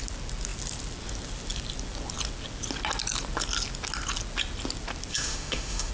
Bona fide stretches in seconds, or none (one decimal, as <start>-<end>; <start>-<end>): 0.0-5.1